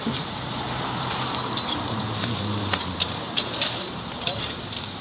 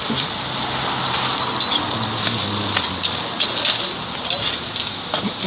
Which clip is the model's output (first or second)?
first